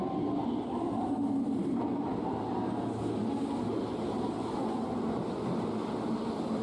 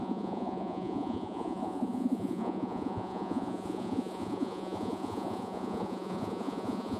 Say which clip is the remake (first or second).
second